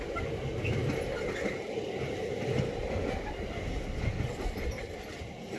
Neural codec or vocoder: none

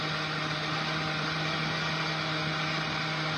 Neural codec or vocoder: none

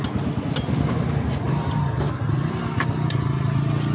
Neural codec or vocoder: none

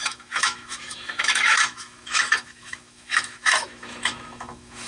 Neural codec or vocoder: autoencoder, DAC-VAE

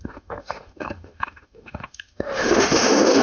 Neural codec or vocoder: autoencoder, DAC-VAE